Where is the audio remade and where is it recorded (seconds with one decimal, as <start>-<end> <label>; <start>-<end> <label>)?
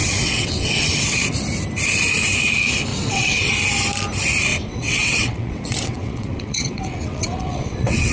0.0-1.2 remade; 1.2-2.9 recorded; 2.9-3.5 remade; 3.5-4.5 recorded; 4.5-8.1 remade